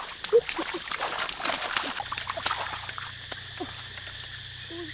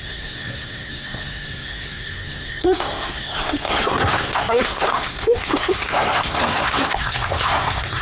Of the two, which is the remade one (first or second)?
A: second